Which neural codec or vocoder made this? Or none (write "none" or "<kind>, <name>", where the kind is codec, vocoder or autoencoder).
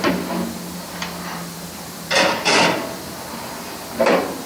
none